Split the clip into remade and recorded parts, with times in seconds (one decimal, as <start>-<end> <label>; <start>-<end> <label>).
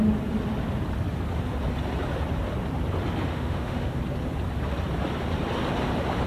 0.0-3.3 recorded; 3.3-4.0 remade; 4.0-6.3 recorded